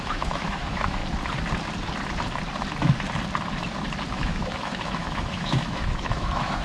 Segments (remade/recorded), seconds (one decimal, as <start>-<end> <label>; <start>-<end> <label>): 0.0-1.0 remade; 1.0-4.1 recorded; 4.1-6.6 remade